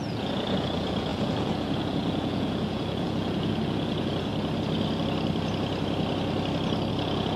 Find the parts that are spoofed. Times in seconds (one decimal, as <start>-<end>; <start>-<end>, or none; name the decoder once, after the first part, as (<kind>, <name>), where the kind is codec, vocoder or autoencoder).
0.0-4.3 (vocoder, Vocos); 6.9-7.4